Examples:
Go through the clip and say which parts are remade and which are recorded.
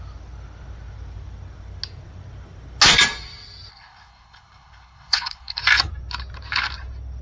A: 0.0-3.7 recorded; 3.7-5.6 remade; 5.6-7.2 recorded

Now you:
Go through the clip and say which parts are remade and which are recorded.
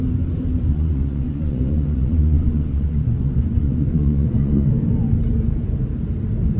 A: 0.0-0.7 recorded; 0.7-4.7 remade; 4.7-6.6 recorded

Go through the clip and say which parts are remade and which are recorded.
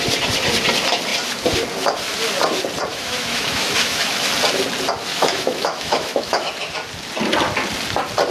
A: 0.0-2.9 recorded; 2.9-4.3 remade; 4.3-5.1 recorded; 5.1-6.5 remade; 6.5-8.3 recorded